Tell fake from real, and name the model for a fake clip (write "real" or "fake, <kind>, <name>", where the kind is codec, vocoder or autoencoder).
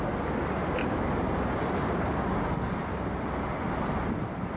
real